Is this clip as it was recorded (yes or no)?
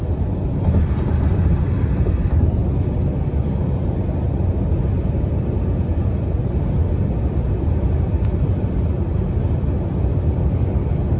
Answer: yes